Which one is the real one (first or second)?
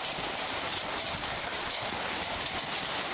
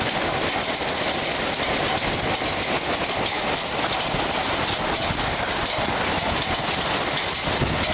second